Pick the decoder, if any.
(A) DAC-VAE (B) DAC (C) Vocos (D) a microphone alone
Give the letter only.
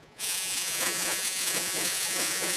C